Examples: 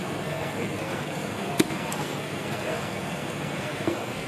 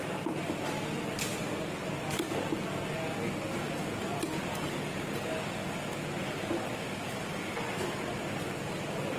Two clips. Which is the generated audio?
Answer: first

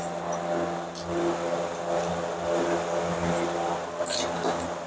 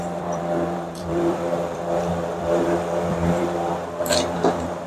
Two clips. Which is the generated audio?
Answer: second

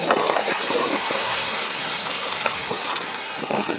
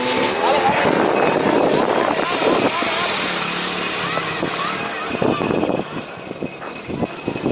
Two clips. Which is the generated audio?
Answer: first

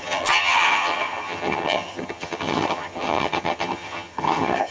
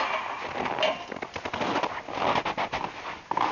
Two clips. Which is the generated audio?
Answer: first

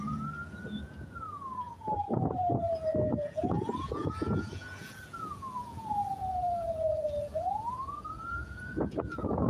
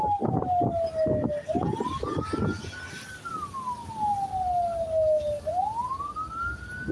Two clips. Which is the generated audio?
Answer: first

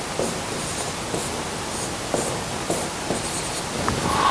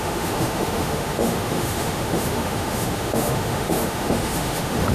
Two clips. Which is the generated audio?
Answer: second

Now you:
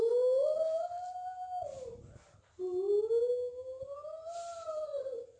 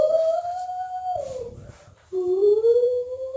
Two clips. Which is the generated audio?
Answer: second